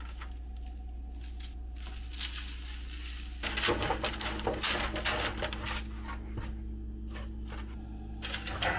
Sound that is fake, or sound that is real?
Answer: real